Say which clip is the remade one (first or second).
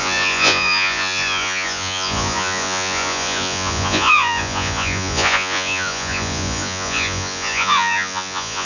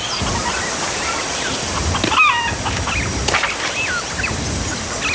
first